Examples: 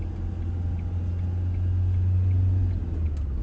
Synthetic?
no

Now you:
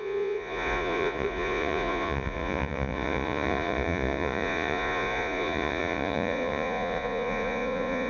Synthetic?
yes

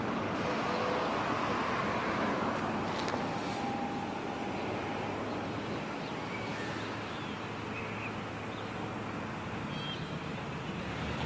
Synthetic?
no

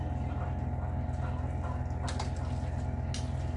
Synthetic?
no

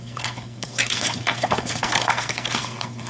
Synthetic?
yes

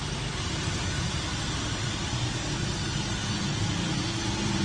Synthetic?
no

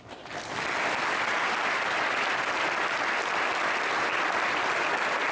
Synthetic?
no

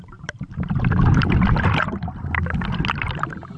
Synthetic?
no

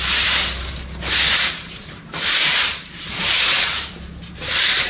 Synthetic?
yes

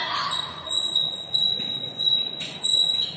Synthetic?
yes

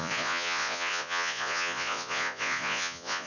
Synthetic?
yes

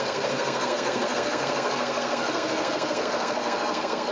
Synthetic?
yes